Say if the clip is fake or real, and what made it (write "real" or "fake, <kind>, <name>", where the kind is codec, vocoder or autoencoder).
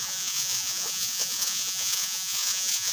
fake, vocoder, Vocos